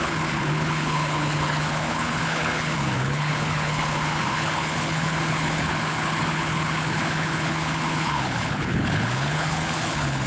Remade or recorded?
remade